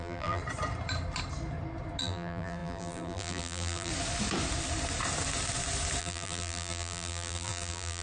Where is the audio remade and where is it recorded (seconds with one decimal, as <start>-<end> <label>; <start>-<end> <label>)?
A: 0.0-0.4 remade; 0.4-2.0 recorded; 2.0-3.9 remade; 3.9-6.0 recorded; 6.0-8.0 remade